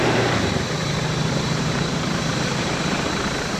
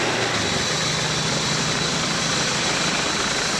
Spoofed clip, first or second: first